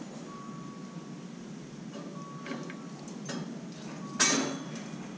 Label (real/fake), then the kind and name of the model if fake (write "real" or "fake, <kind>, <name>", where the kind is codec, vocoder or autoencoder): real